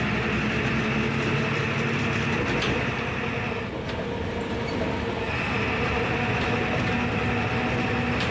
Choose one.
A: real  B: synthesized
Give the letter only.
A